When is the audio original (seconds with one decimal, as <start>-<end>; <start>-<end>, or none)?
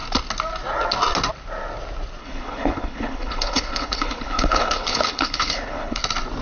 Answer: 0.0-2.2; 6.0-6.4